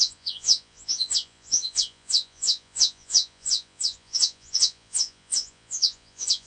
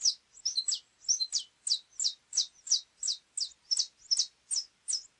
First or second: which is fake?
first